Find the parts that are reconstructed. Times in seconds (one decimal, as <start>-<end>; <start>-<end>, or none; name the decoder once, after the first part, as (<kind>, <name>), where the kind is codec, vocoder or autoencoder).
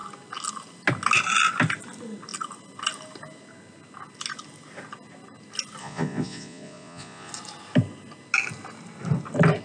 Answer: 5.8-7.3 (vocoder, Vocos)